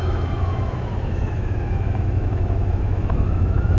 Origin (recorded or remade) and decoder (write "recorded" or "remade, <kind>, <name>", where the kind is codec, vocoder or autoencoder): remade, autoencoder, DAC-VAE